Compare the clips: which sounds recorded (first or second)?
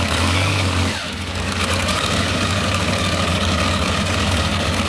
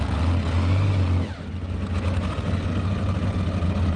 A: second